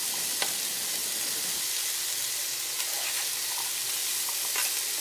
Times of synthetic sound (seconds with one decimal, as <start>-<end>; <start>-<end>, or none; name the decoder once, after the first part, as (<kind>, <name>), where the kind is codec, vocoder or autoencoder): none

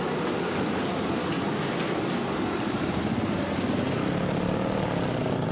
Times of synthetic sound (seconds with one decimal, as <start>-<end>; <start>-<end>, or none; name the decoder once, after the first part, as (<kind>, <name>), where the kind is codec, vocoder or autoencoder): none

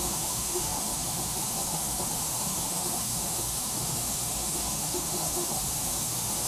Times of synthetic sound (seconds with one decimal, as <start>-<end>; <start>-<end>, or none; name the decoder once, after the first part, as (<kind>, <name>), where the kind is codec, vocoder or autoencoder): 0.0-6.5 (autoencoder, DAC-VAE)